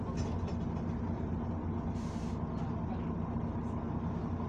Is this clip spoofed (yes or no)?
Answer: no